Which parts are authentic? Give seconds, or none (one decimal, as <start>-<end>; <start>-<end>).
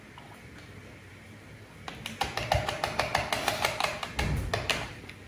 0.0-5.3